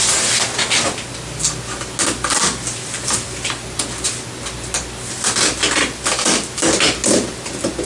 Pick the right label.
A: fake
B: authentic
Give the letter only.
B